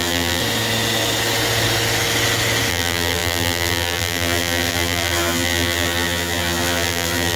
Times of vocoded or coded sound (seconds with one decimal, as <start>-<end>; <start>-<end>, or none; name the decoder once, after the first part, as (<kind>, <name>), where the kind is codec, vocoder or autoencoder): 0.0-0.4 (vocoder, BigVGAN v2); 2.7-7.4